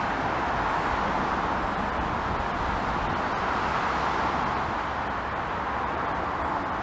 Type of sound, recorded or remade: recorded